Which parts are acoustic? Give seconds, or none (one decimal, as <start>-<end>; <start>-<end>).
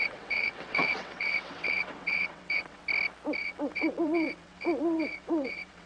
2.8-3.4